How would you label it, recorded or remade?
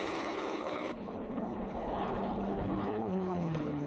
remade